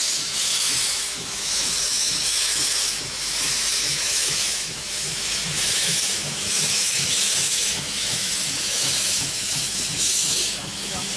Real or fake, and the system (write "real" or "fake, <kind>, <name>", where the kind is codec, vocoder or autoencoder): fake, autoencoder, DAC-VAE